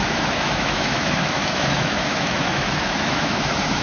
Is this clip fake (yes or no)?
yes